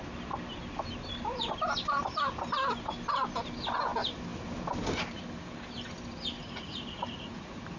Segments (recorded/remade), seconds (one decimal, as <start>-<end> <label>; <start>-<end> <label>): 0.0-6.4 recorded; 6.4-7.8 remade

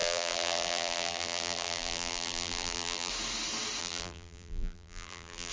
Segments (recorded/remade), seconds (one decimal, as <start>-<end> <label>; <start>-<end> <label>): 0.0-3.1 remade; 3.1-3.8 recorded; 3.8-5.5 remade